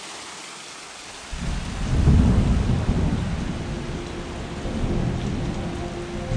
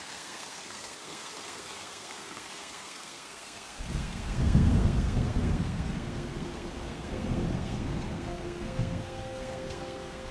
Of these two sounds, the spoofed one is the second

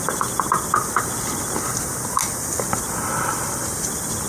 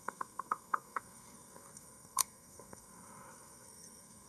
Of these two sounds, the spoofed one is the second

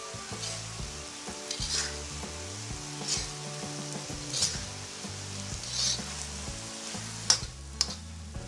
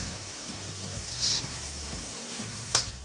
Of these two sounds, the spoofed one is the second